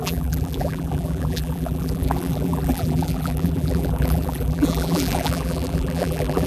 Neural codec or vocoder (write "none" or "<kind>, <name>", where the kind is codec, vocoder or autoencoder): vocoder, BigVGAN v2